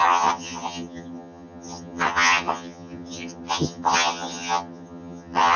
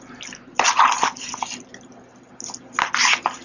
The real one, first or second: second